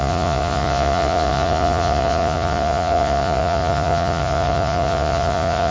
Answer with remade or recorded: remade